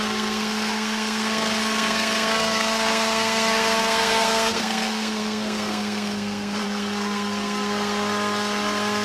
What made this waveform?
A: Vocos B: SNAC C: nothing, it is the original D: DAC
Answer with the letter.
B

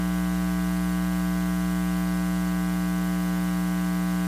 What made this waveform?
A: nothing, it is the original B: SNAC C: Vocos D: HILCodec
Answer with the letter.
A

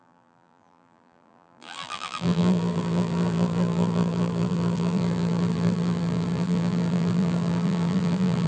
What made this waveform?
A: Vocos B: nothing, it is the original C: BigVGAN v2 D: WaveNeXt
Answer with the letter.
C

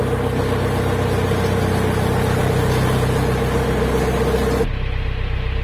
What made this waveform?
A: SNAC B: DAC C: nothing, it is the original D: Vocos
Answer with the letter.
C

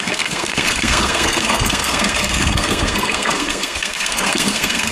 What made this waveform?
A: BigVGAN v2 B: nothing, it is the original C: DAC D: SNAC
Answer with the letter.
D